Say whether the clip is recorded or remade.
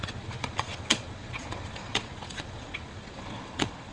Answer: remade